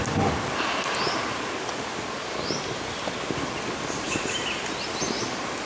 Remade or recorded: recorded